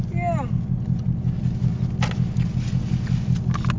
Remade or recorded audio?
recorded